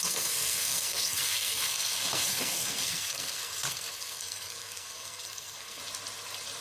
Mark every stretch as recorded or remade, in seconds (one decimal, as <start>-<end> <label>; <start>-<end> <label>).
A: 0.0-5.8 remade; 5.8-6.6 recorded